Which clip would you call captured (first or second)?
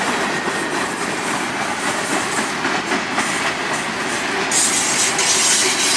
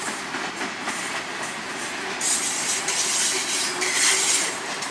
first